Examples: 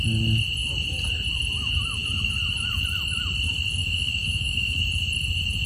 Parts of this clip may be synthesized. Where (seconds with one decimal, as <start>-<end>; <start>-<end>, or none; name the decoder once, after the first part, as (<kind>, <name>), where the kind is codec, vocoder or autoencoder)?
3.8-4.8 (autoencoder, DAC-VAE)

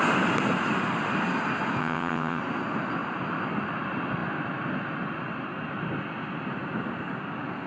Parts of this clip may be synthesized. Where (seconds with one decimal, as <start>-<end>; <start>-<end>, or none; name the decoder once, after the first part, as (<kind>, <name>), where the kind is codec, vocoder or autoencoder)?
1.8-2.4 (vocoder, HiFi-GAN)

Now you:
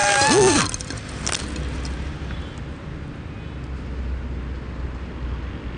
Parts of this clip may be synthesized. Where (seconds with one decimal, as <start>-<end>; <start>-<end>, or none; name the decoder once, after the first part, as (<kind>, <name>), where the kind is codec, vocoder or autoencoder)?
none

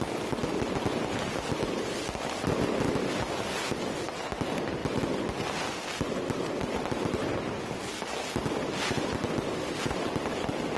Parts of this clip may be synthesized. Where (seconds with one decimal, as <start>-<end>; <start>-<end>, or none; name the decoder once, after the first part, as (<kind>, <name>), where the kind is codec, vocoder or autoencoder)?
none